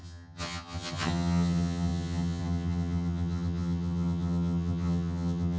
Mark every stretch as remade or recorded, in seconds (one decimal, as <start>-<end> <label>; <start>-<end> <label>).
0.0-5.6 remade